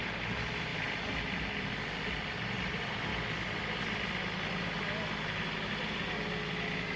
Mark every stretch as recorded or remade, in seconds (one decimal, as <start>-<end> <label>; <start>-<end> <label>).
0.0-7.0 recorded